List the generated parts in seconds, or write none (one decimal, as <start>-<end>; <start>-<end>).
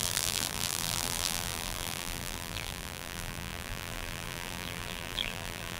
0.0-5.8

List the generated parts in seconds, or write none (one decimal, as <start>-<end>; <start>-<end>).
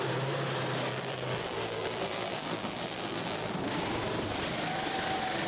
0.9-3.5